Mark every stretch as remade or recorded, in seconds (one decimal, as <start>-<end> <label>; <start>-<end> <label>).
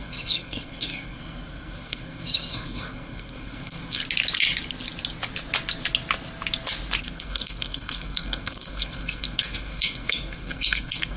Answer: 0.0-4.0 remade; 4.0-7.0 recorded; 7.0-11.2 remade